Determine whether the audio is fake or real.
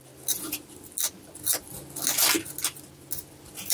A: real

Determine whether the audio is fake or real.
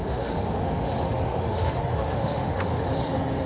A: fake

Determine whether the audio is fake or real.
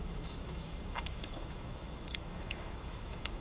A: fake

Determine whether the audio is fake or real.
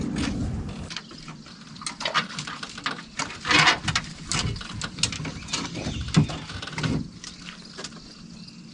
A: real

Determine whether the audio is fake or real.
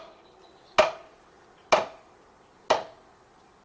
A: real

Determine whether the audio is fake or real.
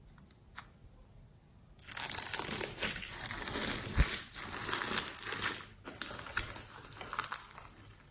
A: real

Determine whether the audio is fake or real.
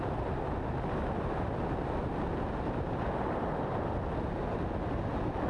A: real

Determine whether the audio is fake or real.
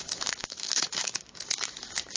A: fake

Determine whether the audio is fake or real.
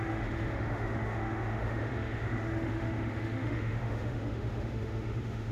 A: fake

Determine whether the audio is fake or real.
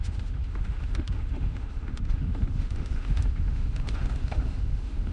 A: fake